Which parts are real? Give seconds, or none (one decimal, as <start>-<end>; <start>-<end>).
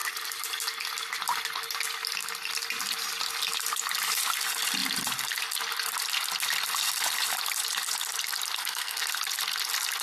0.0-8.6; 9.1-10.0